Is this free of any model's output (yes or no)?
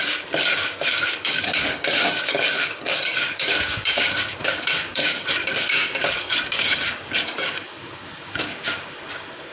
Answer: no